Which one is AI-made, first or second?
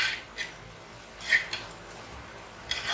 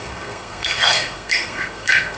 second